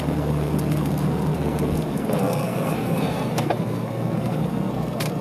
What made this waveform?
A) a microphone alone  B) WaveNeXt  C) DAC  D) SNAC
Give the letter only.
D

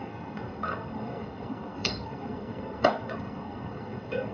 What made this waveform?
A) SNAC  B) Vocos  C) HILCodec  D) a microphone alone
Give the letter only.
A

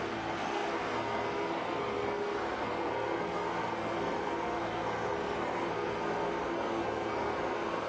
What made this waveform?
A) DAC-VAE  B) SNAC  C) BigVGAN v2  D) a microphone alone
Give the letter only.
B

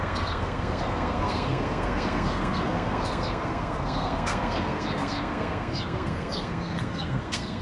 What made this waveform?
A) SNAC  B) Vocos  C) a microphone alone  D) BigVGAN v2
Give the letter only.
A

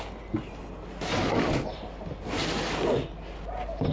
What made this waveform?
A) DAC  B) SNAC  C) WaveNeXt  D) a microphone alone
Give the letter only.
D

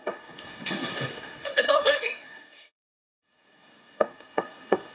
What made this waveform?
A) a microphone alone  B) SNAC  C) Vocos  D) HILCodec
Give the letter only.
B